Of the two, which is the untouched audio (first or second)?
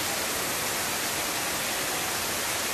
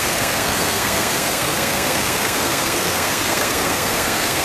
first